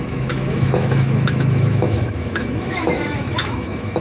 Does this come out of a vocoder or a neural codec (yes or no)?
yes